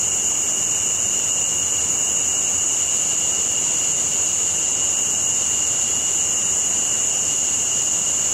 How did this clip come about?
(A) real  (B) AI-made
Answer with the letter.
A